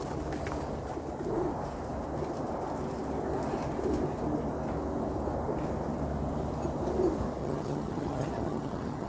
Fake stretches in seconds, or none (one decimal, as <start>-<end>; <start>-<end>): 7.4-9.1